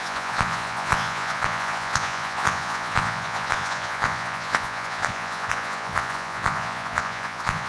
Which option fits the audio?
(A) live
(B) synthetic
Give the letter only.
B